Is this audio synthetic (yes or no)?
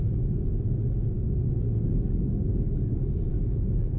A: no